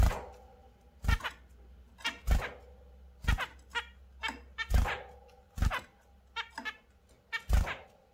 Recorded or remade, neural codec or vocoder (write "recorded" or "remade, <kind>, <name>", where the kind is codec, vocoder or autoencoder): recorded